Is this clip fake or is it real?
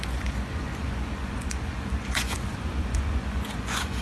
fake